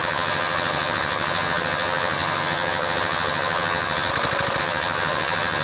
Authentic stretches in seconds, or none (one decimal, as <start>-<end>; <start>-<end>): 4.1-4.6